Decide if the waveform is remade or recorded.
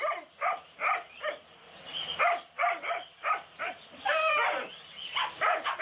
recorded